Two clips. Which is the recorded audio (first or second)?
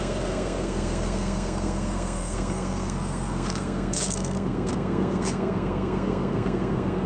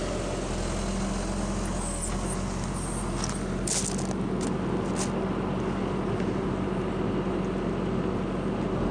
second